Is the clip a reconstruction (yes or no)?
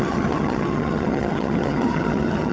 yes